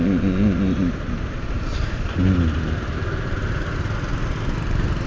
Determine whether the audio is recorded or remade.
recorded